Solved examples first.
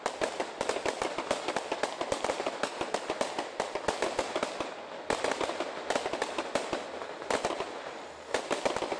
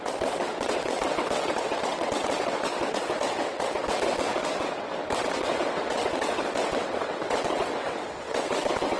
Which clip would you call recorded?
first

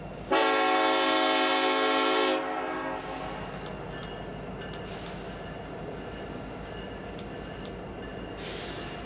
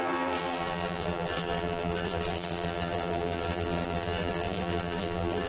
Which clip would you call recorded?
first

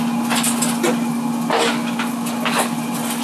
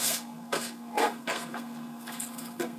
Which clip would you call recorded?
first